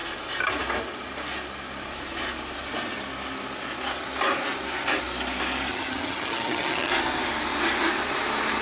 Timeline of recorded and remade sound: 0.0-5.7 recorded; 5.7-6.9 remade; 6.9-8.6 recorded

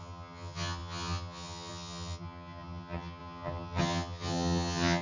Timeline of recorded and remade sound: 0.0-5.0 remade

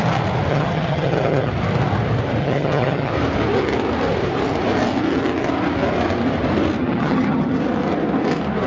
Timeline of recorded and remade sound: 0.0-0.5 recorded; 0.5-1.5 remade; 1.5-2.4 recorded; 2.4-3.1 remade; 3.1-6.8 recorded; 6.8-7.6 remade; 7.6-8.7 recorded

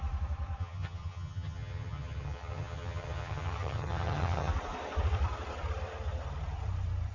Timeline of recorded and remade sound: 0.0-0.6 recorded; 0.6-4.5 remade; 4.5-7.1 recorded

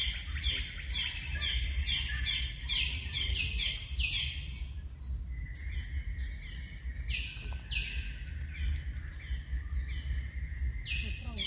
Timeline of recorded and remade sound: 0.0-11.5 recorded

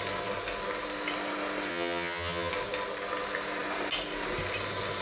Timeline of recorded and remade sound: 0.0-1.7 recorded; 1.7-2.5 remade; 2.5-5.0 recorded

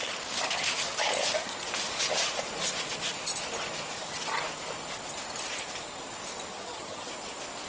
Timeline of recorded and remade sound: 0.0-6.5 recorded; 6.5-7.1 remade; 7.1-7.7 recorded